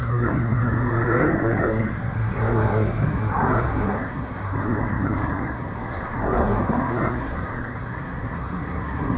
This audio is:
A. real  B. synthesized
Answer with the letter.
B